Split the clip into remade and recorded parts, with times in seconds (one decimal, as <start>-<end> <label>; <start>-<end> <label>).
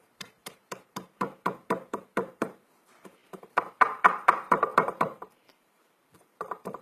0.0-6.8 remade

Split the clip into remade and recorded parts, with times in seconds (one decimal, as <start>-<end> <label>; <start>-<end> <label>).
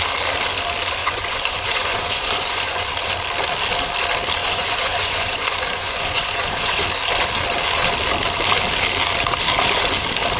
0.0-1.0 recorded; 1.0-2.9 remade; 2.9-4.4 recorded; 4.4-6.8 remade; 6.8-10.4 recorded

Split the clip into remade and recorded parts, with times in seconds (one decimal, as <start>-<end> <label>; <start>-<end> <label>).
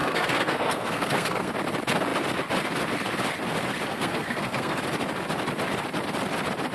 0.0-1.5 remade; 1.5-3.9 recorded; 3.9-4.8 remade; 4.8-6.7 recorded